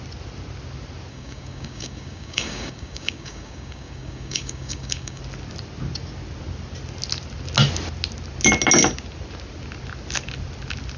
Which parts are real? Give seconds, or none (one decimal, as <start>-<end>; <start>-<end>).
0.0-1.1; 5.2-11.0